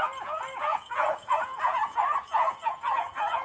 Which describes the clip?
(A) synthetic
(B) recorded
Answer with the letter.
A